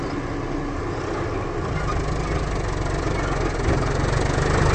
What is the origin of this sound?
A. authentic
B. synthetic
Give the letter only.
A